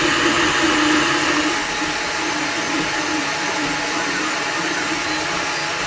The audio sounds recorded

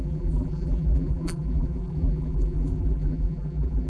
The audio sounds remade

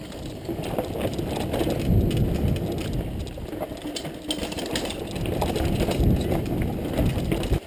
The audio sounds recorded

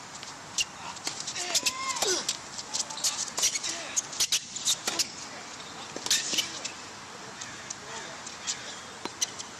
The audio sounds recorded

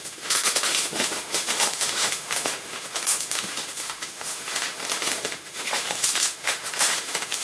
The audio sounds remade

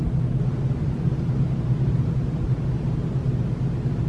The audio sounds recorded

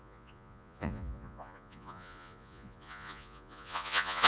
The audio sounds remade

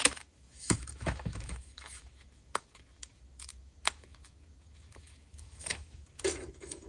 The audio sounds remade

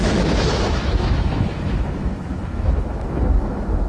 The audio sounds remade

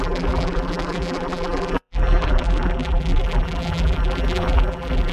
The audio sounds remade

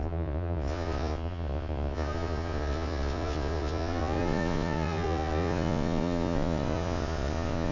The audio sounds remade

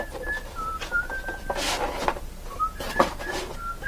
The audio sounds recorded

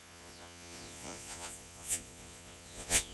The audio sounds remade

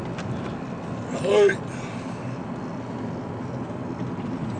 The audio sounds recorded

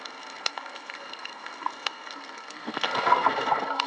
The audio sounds remade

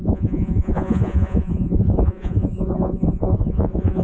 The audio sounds remade